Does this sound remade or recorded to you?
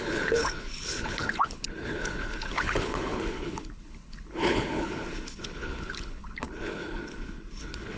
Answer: remade